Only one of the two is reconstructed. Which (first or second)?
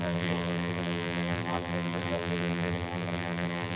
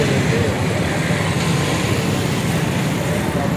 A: first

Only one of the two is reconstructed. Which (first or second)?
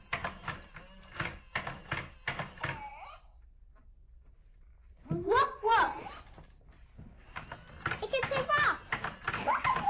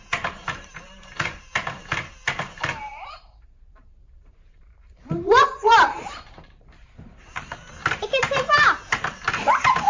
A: second